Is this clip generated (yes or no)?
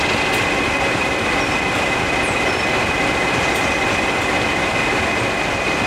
no